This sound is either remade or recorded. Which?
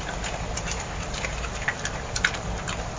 recorded